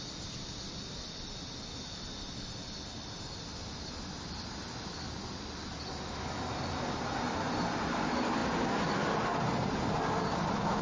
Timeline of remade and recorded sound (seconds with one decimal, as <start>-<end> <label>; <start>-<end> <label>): 0.0-10.8 recorded